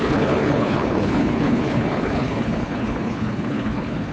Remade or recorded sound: remade